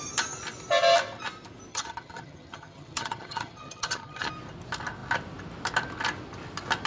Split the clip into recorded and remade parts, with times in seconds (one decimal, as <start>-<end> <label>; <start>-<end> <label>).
0.0-1.7 recorded; 1.7-4.3 remade; 4.3-6.9 recorded